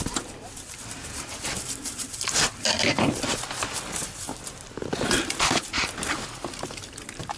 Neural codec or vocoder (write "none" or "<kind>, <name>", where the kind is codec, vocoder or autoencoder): vocoder, BigVGAN v2